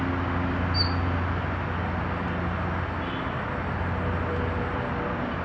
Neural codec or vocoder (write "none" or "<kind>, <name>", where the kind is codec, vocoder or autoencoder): none